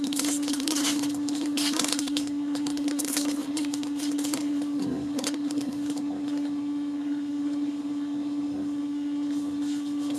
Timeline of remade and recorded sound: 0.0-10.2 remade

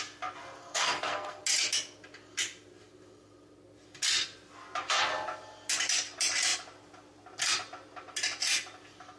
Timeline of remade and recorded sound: 0.0-0.6 recorded; 0.6-1.4 remade; 1.4-9.2 recorded

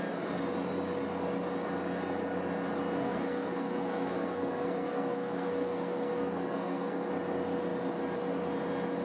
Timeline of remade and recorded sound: 0.0-3.0 recorded; 3.0-7.1 remade; 7.1-9.0 recorded

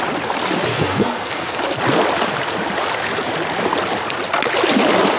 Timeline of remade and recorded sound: 0.0-0.7 recorded; 0.7-1.6 remade; 1.6-5.2 recorded

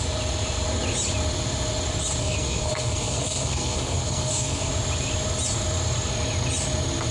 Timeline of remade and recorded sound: 0.0-2.2 recorded; 2.2-4.7 remade; 4.7-7.1 recorded